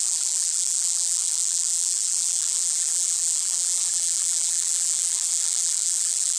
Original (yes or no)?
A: no